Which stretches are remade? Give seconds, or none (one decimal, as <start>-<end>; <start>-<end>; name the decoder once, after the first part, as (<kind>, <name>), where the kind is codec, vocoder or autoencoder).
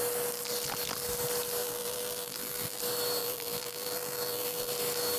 1.6-2.8 (vocoder, BigVGAN v2); 3.2-4.7